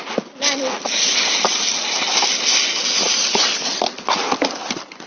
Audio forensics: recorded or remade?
recorded